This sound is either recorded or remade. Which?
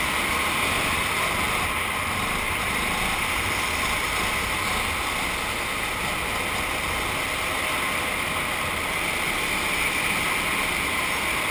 recorded